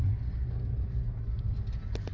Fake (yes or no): no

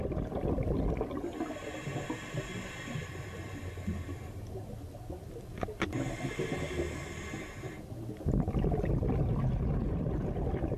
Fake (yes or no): no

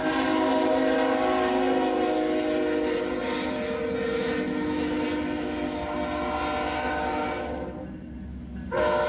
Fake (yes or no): no